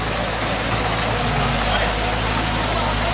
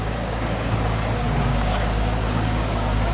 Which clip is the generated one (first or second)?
second